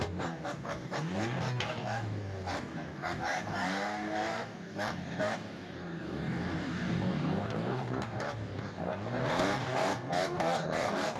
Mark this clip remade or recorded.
remade